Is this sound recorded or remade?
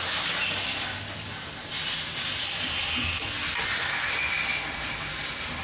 recorded